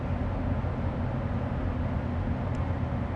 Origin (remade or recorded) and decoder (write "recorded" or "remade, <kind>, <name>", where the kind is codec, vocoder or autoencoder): recorded